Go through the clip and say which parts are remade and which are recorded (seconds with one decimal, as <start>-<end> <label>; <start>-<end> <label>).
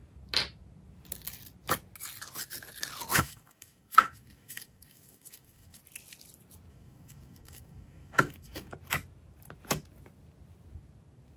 0.0-3.1 recorded; 3.1-5.8 remade; 5.8-6.7 recorded; 6.7-8.7 remade; 8.7-11.4 recorded